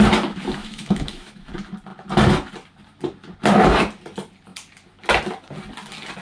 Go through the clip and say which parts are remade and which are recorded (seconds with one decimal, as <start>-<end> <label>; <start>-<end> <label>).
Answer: 0.0-0.6 recorded; 0.6-1.5 remade; 1.5-6.2 recorded